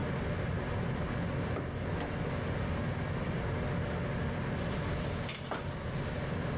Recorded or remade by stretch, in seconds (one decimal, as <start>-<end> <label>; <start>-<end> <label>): 0.0-6.6 recorded